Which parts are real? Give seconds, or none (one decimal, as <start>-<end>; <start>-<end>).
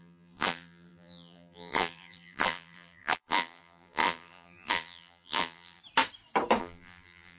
5.8-6.6